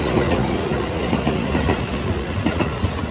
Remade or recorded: remade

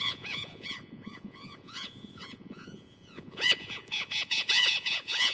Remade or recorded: remade